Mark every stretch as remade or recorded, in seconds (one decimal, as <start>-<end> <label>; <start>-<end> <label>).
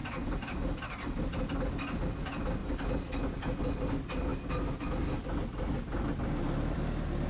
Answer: 0.0-7.3 recorded